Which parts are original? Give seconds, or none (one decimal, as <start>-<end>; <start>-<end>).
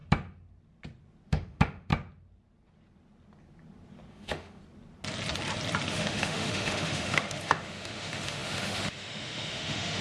0.0-1.3; 1.9-4.1; 4.6-5.9